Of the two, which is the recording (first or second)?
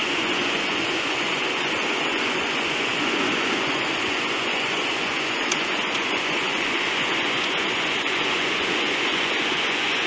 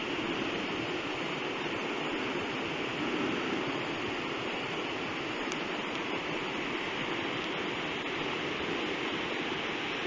second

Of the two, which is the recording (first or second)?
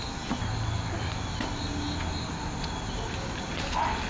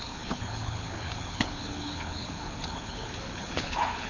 first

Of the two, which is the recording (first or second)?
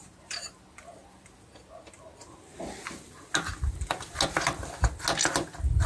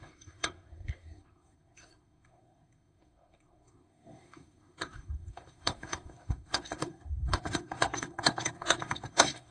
first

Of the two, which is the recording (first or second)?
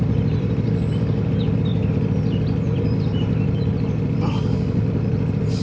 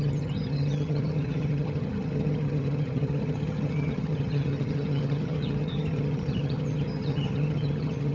first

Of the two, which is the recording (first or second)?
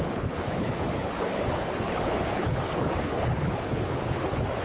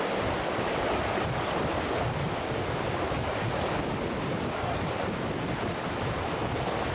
second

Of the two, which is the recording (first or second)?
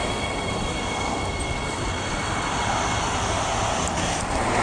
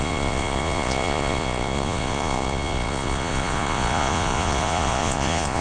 first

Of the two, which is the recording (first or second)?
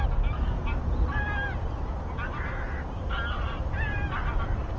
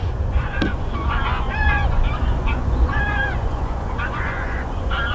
first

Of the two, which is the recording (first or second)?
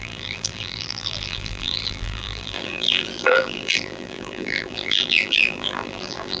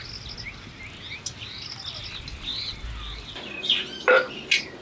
second